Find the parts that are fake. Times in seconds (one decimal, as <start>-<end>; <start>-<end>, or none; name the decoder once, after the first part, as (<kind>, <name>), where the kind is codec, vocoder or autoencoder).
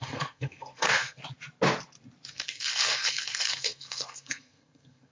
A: 0.0-1.2 (codec, SNAC); 2.3-5.1